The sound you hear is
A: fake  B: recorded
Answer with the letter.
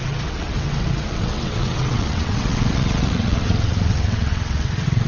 A